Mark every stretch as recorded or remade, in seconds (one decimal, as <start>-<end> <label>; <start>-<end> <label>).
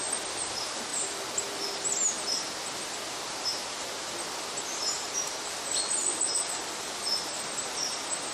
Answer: 0.0-8.3 recorded